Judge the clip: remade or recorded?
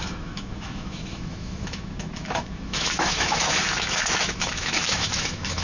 remade